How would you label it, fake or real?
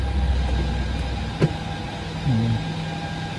real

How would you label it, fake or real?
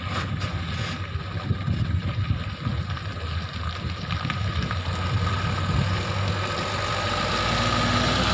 real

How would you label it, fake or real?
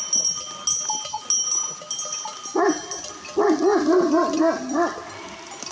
real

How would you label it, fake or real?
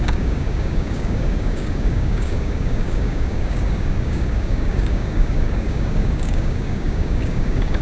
fake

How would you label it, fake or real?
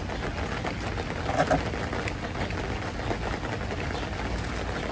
real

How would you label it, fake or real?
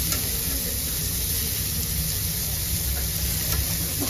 real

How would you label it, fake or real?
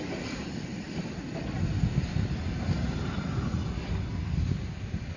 real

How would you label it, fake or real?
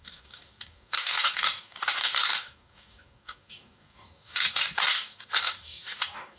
fake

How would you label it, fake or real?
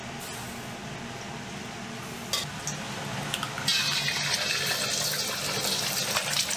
real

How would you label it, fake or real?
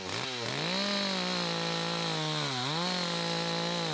real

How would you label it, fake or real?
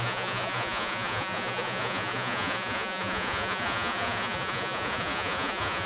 fake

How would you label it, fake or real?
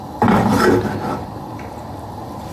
real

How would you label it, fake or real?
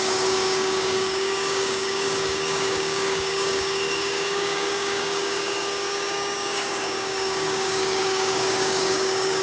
fake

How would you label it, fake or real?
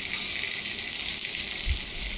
real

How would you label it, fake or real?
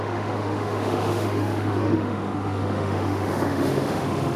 fake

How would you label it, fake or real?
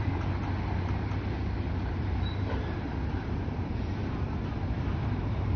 fake